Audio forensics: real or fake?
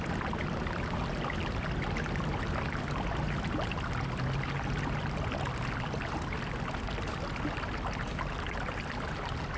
real